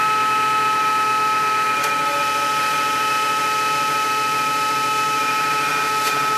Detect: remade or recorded remade